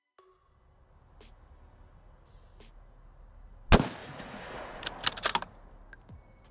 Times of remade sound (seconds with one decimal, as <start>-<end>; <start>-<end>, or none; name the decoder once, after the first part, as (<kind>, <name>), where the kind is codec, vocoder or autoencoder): 4.0-4.8 (vocoder, Vocos)